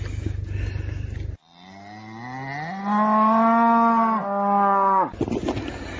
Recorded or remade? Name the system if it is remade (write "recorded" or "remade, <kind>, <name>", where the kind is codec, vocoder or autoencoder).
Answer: recorded